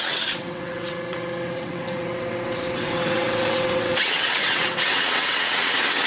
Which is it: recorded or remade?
remade